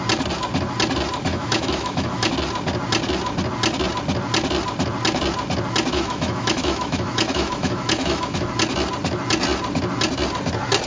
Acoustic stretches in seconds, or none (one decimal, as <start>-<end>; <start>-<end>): 0.0-1.3; 2.3-5.9; 8.5-10.9